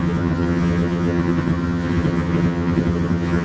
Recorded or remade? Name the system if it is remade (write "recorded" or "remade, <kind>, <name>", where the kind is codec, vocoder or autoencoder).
remade, vocoder, HiFi-GAN